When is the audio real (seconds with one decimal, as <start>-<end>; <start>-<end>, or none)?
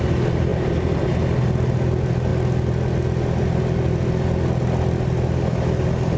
0.0-6.2